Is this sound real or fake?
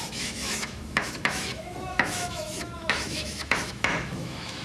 fake